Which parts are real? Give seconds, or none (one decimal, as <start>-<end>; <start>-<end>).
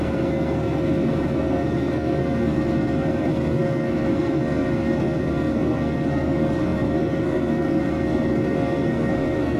none